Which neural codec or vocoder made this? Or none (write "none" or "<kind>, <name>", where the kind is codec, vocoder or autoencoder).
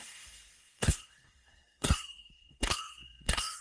codec, SNAC